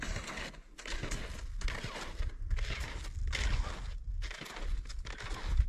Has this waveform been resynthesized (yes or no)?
no